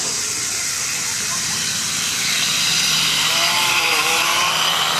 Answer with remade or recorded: remade